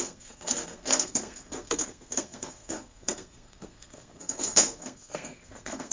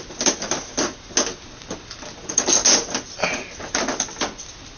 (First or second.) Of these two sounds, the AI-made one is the first